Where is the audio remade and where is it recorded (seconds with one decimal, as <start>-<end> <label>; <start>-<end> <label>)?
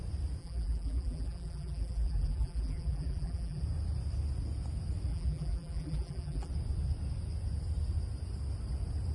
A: 0.0-0.4 recorded; 0.4-3.6 remade; 3.6-5.1 recorded; 5.1-6.5 remade; 6.5-9.1 recorded